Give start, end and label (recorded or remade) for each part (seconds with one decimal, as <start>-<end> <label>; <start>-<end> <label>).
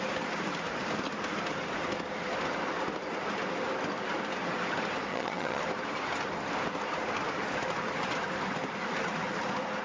0.0-5.1 recorded; 5.1-5.6 remade; 5.6-9.8 recorded